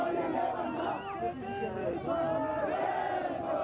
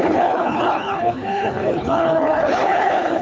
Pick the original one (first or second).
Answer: first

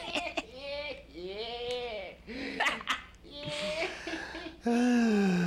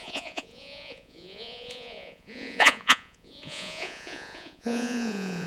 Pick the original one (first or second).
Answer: first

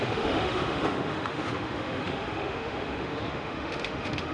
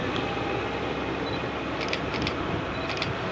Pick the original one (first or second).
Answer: second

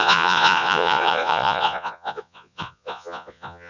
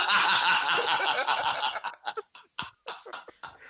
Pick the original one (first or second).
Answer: second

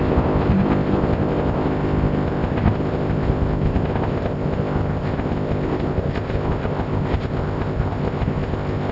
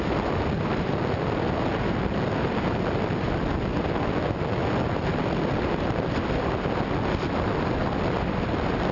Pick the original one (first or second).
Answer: second